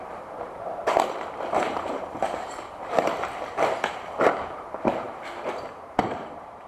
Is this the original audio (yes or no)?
no